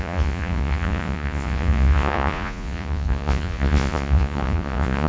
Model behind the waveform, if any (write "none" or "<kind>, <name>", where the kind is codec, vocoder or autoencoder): vocoder, Vocos